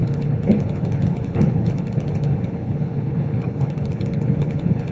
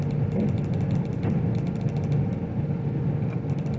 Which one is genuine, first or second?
second